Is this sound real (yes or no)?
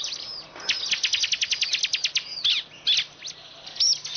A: yes